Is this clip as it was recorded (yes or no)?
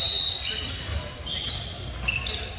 yes